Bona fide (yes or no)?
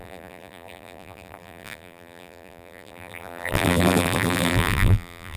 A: no